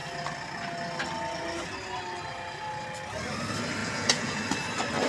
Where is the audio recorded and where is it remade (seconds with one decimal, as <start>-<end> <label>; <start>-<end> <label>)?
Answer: 0.0-3.8 recorded; 3.8-4.4 remade; 4.4-5.1 recorded